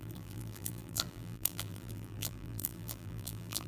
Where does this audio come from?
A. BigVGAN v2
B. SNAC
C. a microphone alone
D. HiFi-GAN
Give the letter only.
A